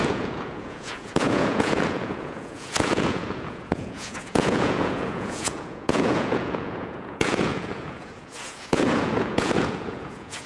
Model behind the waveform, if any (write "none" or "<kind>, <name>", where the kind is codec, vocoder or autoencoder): vocoder, Vocos